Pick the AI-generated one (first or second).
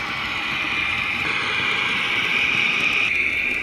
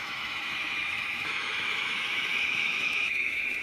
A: second